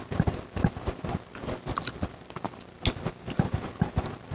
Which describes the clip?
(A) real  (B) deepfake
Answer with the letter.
A